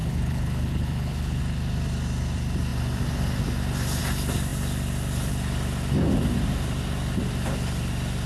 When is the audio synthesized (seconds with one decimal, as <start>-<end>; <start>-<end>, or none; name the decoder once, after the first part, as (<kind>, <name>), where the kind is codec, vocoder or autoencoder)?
0.0-1.4 (codec, HILCodec)